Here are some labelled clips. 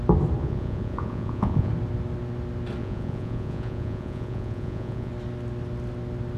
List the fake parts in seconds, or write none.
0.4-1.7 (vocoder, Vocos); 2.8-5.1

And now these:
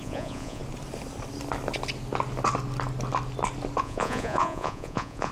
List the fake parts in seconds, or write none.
0.0-0.6 (vocoder, Vocos); 3.8-5.3